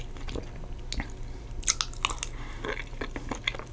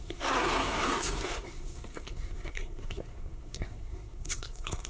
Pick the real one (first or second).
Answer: first